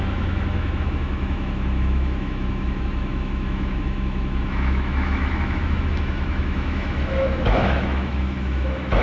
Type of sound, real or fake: fake